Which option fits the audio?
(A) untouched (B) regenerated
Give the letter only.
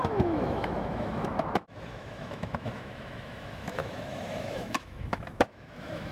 B